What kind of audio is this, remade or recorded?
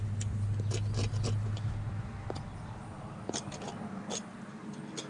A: recorded